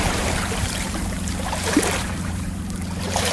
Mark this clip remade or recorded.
remade